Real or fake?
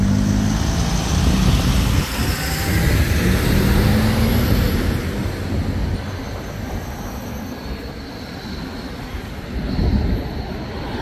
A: real